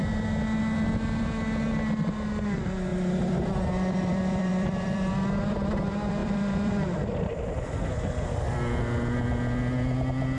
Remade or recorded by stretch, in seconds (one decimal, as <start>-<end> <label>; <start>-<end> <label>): 0.0-2.9 recorded; 2.9-5.1 remade; 5.1-6.2 recorded; 6.2-8.6 remade; 8.6-10.4 recorded